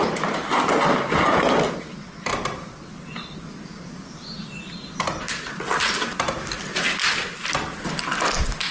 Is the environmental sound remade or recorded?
recorded